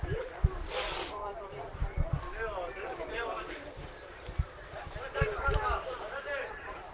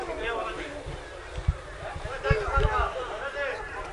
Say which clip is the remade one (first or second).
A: first